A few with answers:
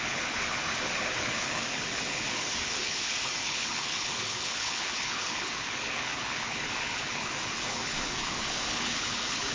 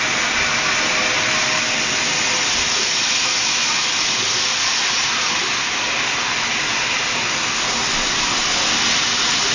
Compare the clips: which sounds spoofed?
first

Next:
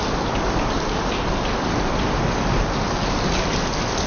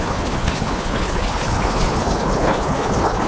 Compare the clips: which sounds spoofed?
second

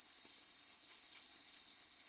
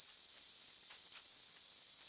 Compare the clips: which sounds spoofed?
first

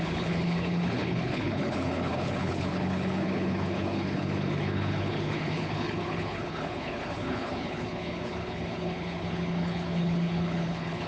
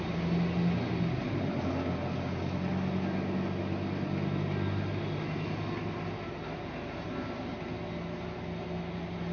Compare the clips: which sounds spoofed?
first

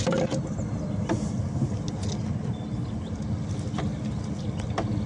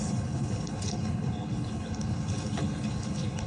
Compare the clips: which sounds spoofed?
second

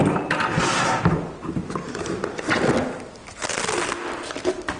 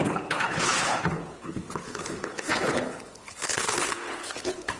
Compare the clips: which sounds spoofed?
second